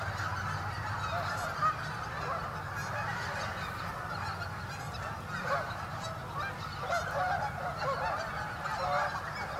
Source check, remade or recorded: recorded